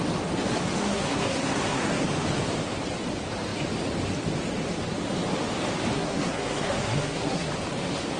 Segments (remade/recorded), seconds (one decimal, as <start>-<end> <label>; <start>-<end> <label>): 0.0-0.8 recorded; 0.8-2.0 remade; 2.0-5.9 recorded; 5.9-7.5 remade; 7.5-8.2 recorded